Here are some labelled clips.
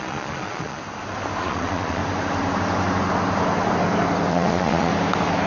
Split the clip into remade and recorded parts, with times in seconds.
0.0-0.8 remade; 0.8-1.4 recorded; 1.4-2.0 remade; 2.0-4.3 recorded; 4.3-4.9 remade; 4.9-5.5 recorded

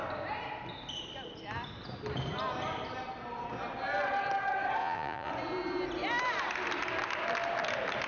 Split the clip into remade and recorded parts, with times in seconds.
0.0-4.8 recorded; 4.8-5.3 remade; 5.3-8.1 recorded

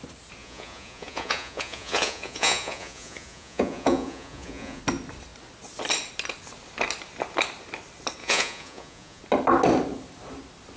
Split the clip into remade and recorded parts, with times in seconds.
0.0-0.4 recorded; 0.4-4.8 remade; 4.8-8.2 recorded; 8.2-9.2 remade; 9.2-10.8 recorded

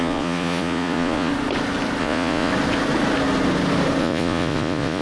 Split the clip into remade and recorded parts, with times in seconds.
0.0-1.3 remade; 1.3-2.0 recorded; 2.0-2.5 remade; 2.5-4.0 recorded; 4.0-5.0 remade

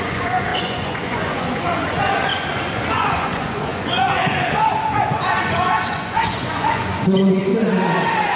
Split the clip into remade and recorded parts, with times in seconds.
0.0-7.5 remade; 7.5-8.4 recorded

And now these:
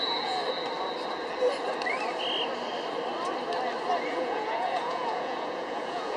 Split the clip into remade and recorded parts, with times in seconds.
0.0-0.4 remade; 0.4-4.1 recorded; 4.1-6.2 remade

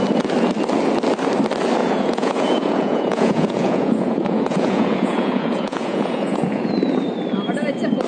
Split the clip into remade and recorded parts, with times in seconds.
0.0-1.8 recorded; 1.8-6.7 remade; 6.7-8.1 recorded

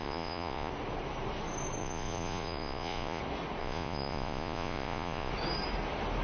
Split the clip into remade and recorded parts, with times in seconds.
0.0-0.7 remade; 0.7-1.8 recorded; 1.8-3.2 remade; 3.2-3.6 recorded; 3.6-5.3 remade; 5.3-6.2 recorded